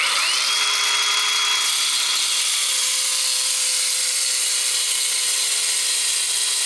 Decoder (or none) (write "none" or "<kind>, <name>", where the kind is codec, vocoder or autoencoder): none